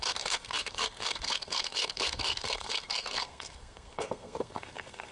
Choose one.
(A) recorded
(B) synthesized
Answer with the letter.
B